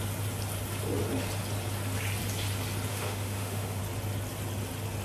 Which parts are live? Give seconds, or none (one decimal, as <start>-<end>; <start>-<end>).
0.0-2.9; 3.8-5.0